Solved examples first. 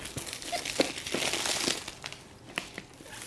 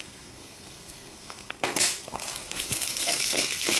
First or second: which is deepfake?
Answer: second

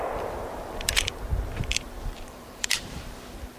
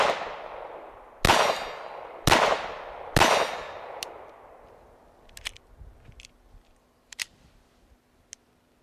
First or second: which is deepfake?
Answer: first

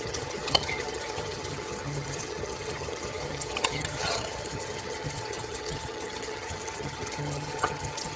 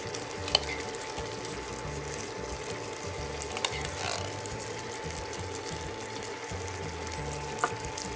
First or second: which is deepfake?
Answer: first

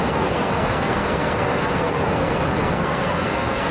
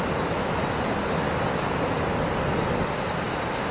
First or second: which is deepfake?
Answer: first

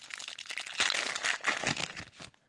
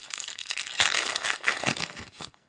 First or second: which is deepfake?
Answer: second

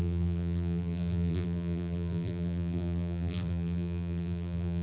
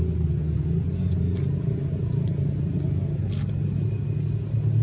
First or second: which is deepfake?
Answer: first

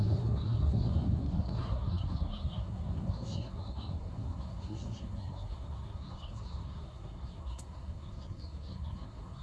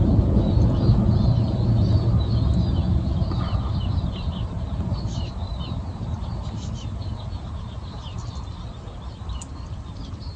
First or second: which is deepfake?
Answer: first